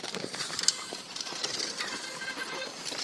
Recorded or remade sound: remade